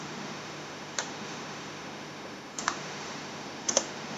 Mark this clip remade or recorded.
remade